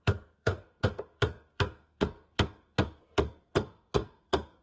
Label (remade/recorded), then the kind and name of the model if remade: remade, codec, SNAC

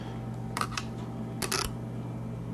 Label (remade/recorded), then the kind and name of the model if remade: recorded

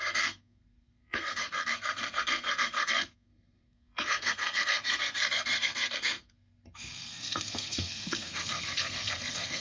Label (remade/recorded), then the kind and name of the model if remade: remade, codec, SNAC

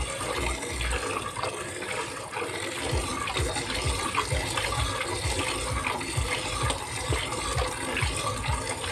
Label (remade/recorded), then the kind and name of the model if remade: recorded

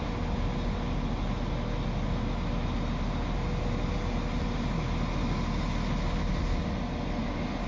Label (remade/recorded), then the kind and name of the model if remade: recorded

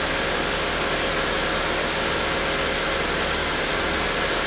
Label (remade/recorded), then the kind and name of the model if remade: recorded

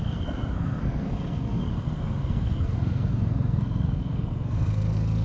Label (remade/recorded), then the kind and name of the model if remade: remade, codec, SNAC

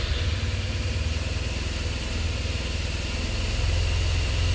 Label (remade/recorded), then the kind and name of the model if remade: recorded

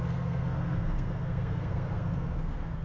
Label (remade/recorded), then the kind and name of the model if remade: remade, codec, SNAC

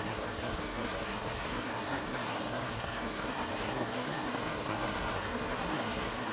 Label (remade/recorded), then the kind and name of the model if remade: remade, codec, SNAC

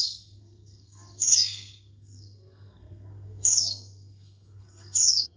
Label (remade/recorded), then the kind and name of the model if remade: remade, codec, SNAC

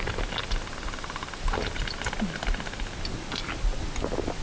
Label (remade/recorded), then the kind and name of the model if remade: recorded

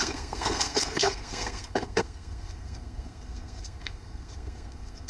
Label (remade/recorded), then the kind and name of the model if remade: remade, codec, SNAC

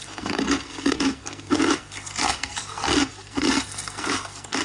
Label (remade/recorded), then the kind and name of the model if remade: remade, codec, SNAC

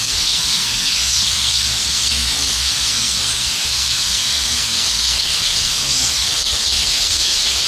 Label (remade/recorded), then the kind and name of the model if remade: remade, codec, SNAC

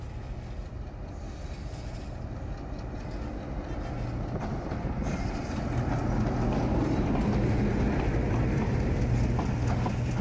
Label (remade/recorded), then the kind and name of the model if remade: recorded